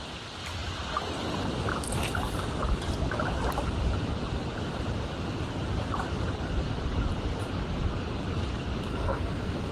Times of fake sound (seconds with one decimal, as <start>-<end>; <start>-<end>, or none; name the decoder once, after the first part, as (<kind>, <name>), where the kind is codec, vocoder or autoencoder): 8.9-9.7 (codec, SNAC)